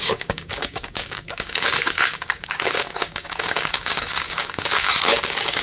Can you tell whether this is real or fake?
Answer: fake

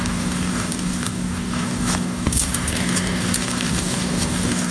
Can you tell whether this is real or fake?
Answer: fake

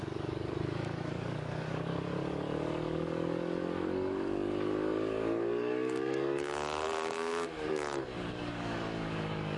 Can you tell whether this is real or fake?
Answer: fake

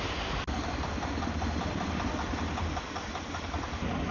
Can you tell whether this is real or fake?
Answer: real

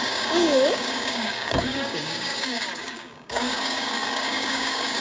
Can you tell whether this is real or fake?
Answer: fake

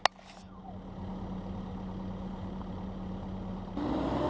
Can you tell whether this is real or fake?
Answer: real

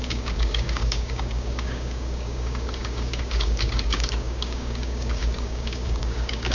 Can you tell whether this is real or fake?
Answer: fake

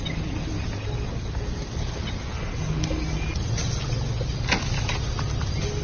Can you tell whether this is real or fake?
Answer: real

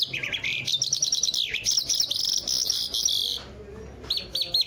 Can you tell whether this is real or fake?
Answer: real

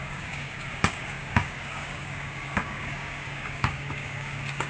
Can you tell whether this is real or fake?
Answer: fake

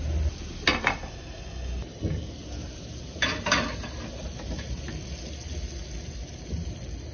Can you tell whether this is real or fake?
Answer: real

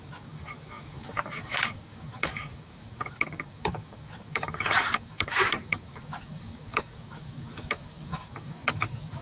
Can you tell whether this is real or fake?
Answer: fake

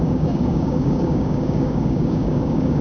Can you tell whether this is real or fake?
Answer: fake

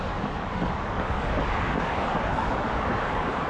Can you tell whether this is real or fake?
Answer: fake